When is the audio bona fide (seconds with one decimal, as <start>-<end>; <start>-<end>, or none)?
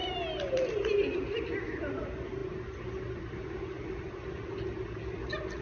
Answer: 0.0-5.6